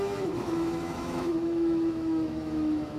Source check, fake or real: fake